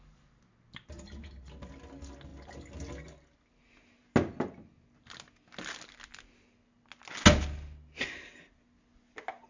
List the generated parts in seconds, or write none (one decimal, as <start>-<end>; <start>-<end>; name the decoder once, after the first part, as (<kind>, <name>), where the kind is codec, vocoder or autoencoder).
none